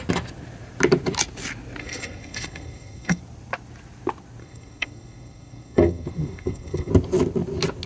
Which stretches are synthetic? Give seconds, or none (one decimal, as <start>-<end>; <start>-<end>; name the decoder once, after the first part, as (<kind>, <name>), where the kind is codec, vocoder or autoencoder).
1.8-3.2 (codec, SNAC); 4.4-6.9